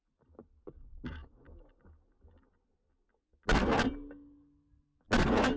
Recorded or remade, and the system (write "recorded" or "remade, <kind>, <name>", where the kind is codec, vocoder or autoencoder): recorded